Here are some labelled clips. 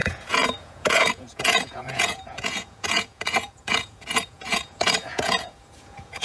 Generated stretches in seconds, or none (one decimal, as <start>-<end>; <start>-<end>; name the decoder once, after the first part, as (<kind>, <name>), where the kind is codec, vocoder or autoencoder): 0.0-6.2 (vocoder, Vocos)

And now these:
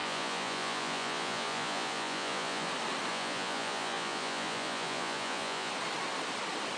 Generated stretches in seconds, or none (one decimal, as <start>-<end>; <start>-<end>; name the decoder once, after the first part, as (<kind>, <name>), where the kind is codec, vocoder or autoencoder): 0.0-2.7 (vocoder, Vocos); 3.1-5.7

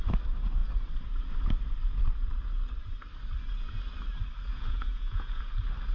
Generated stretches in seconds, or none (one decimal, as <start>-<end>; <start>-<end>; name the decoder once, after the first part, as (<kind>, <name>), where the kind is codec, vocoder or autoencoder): 4.5-5.4 (vocoder, Vocos)